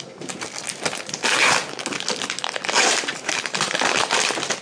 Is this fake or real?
real